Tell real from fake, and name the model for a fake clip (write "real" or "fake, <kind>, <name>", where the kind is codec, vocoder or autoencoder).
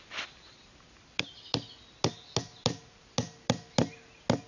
real